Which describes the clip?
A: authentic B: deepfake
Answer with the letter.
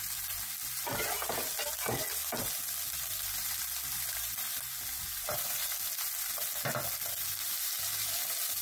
A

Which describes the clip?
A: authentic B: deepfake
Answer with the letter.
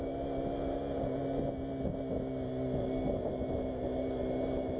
A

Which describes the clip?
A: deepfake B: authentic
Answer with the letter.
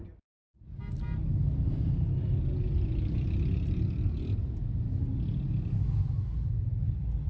B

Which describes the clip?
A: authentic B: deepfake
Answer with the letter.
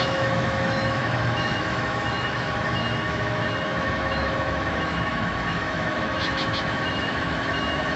B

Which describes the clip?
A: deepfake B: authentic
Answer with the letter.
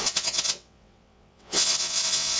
A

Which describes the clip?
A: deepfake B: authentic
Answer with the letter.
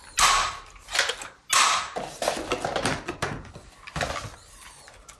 B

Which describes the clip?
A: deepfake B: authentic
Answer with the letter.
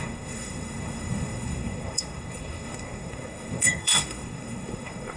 A